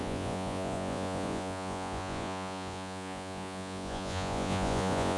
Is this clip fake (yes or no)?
yes